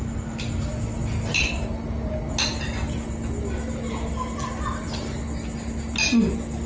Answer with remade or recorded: recorded